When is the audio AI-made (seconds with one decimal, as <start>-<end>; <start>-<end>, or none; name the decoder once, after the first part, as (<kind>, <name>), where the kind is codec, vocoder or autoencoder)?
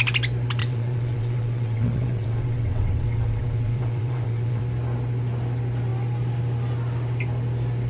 0.6-4.6 (vocoder, WaveNeXt)